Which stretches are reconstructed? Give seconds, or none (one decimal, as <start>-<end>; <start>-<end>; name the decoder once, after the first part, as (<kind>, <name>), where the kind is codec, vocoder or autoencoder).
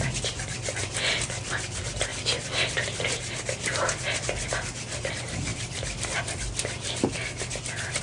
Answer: none